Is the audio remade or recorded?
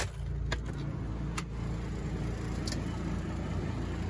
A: recorded